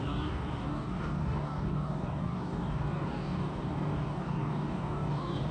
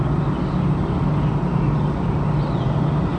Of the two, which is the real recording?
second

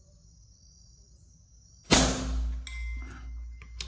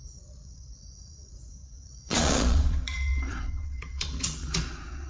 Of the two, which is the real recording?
first